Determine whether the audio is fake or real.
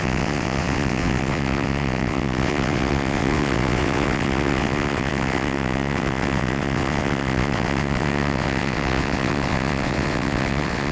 fake